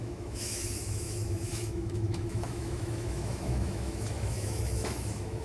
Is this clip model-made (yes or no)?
yes